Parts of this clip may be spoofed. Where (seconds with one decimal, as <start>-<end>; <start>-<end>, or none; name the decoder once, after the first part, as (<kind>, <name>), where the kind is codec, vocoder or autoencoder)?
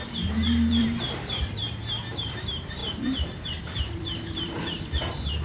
0.0-5.4 (vocoder, BigVGAN v2)